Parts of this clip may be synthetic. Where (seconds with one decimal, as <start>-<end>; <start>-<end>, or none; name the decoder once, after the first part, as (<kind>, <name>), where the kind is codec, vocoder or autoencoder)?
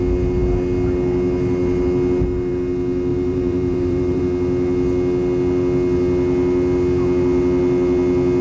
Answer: 3.1-4.2 (vocoder, BigVGAN v2)